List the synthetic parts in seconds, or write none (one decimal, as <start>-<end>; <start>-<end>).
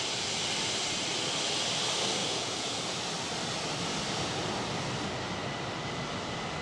2.2-3.0